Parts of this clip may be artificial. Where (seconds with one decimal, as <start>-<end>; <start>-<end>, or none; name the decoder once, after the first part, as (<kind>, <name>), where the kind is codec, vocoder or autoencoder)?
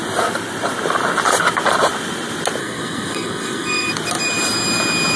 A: 2.6-3.9 (codec, SNAC)